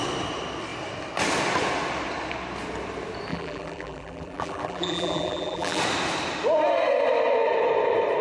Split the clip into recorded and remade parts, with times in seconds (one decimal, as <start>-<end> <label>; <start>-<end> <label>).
0.0-3.3 recorded; 3.3-5.8 remade; 5.8-8.2 recorded